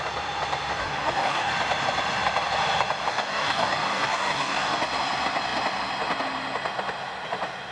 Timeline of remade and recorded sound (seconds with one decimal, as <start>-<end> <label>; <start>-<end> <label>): 0.0-0.8 recorded; 0.8-1.5 remade; 1.5-3.1 recorded; 3.1-4.8 remade; 4.8-7.7 recorded